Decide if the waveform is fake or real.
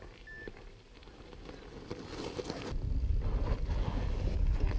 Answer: real